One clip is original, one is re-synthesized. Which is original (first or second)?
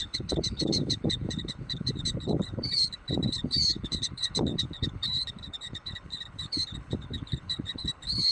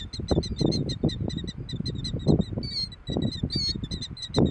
second